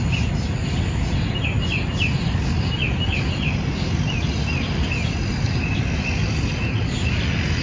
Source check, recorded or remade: recorded